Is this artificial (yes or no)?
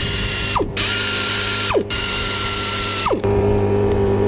yes